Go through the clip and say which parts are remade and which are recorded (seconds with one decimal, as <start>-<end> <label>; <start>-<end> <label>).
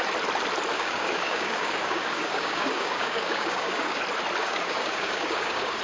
0.0-0.7 recorded; 0.7-4.0 remade; 4.0-4.4 recorded; 4.4-5.8 remade